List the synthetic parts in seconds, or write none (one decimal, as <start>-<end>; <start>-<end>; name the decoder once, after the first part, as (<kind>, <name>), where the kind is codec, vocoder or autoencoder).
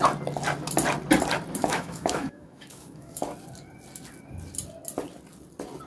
1.6-3.2 (autoencoder, DAC-VAE)